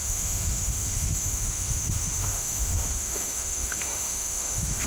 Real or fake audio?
fake